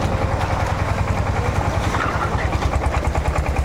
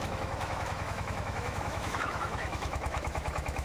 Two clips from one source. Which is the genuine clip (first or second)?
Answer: first